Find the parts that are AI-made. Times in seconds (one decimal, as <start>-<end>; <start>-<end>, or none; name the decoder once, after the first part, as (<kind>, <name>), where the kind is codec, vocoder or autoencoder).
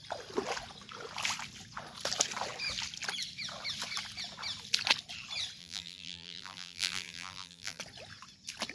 5.6-7.8 (vocoder, BigVGAN v2)